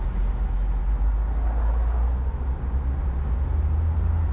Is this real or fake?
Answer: real